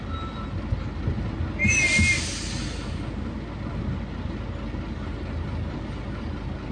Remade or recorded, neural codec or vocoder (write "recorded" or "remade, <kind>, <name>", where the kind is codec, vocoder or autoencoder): recorded